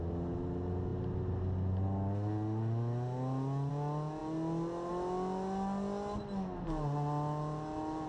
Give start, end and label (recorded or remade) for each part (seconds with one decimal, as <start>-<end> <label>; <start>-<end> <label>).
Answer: 0.0-8.1 recorded